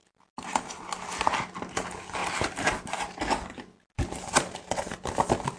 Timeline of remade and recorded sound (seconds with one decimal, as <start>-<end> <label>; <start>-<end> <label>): 0.0-5.6 recorded

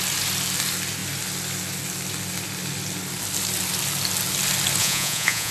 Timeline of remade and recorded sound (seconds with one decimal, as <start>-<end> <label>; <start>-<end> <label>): 0.0-4.8 recorded; 4.8-5.5 remade